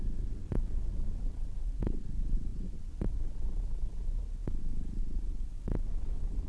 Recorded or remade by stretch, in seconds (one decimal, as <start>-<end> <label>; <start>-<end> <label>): 0.0-6.5 remade

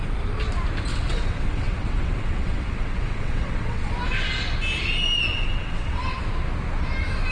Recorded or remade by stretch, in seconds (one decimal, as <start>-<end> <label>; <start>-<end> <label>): 0.0-0.9 recorded; 0.9-3.9 remade; 3.9-5.3 recorded; 5.3-6.2 remade; 6.2-7.3 recorded

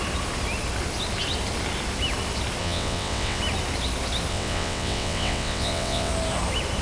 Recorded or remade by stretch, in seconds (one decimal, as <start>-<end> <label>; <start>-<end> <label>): 0.0-2.6 recorded; 2.6-3.4 remade; 3.4-4.3 recorded; 4.3-6.1 remade; 6.1-6.8 recorded

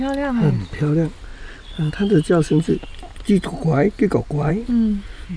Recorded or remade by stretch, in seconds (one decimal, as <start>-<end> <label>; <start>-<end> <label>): 0.0-1.3 recorded; 1.3-1.9 remade; 1.9-5.4 recorded

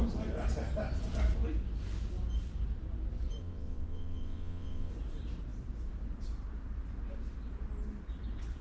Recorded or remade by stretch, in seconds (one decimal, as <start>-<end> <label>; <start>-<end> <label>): 0.0-3.4 recorded; 3.4-4.9 remade; 4.9-8.6 recorded

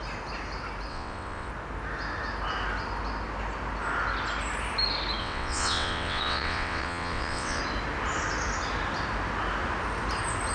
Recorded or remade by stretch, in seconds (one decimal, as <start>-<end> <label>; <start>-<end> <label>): 0.0-0.9 recorded; 0.9-1.5 remade; 1.5-5.2 recorded; 5.2-7.6 remade; 7.6-10.5 recorded

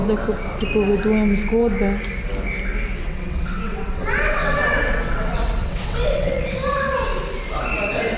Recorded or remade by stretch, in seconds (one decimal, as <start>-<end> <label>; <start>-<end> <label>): 0.0-3.0 recorded; 3.0-7.1 remade; 7.1-8.2 recorded